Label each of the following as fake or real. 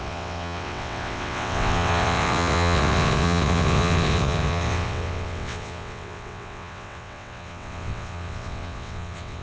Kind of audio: fake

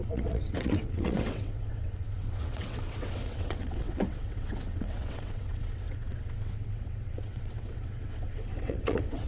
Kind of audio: fake